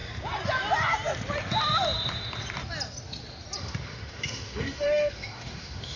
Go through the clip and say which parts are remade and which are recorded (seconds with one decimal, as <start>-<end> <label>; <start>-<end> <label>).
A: 0.0-3.6 recorded; 3.6-6.0 remade